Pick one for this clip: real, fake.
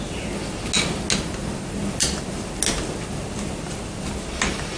real